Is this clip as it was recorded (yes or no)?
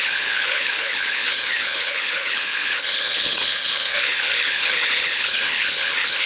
no